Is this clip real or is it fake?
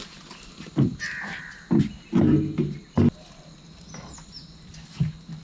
real